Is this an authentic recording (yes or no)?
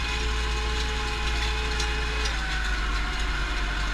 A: yes